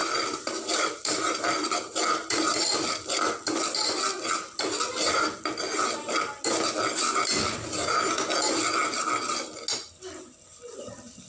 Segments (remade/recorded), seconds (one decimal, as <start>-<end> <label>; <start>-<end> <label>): 0.0-3.4 remade; 3.4-11.3 recorded